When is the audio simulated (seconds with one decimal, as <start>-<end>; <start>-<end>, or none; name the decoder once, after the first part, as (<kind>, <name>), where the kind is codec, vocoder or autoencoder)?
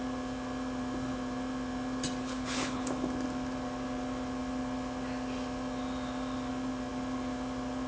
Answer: 2.2-2.9 (codec, HILCodec)